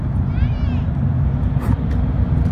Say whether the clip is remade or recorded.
recorded